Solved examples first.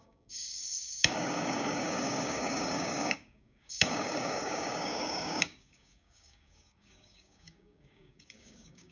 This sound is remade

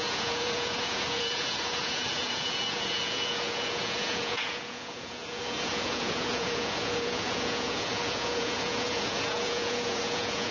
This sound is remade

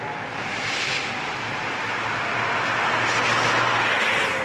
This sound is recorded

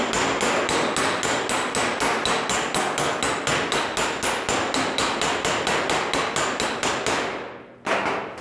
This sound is recorded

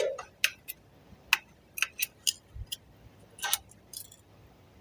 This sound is recorded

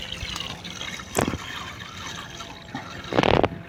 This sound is recorded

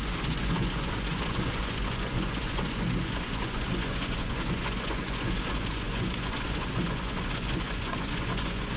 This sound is remade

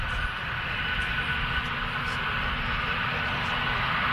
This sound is recorded